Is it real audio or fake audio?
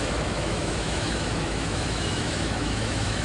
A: fake